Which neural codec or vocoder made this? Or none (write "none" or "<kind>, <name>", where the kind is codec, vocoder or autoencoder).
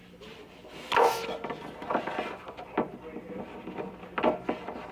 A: none